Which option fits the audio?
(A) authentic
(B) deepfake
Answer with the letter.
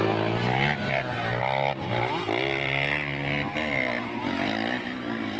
A